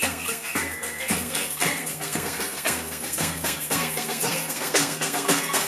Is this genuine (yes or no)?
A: no